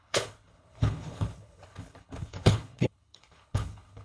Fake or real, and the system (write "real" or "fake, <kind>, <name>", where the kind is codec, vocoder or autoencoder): fake, codec, HILCodec